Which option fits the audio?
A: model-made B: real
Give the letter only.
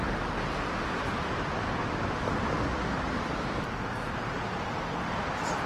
B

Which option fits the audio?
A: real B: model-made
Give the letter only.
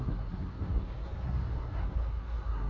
B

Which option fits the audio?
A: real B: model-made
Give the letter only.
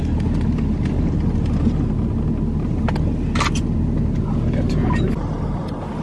A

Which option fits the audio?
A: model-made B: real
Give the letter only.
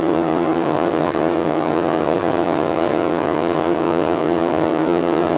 A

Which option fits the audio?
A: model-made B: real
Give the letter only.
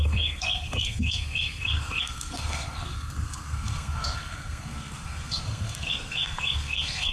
A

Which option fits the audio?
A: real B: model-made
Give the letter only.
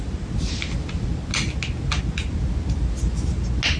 A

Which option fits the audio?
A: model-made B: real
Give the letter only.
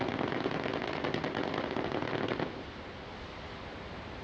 B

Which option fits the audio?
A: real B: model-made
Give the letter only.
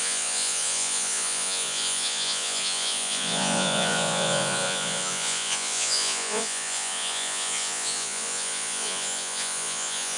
B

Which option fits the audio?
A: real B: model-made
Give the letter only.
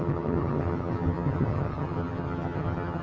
B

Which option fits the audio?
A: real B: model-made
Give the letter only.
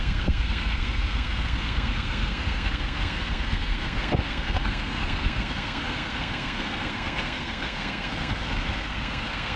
B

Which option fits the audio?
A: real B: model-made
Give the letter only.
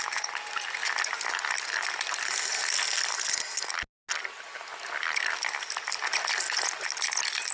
A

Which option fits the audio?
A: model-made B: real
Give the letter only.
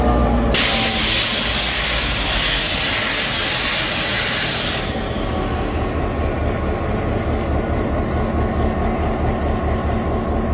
B